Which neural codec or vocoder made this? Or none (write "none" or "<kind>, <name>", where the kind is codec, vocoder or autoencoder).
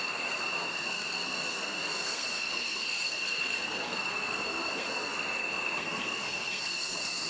codec, SNAC